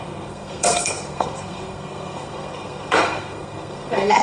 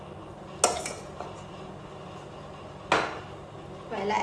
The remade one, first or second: first